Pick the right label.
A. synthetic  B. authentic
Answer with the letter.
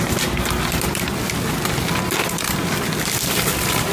B